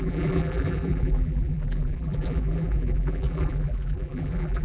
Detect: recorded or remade remade